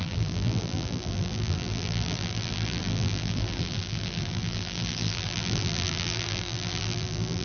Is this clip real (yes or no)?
no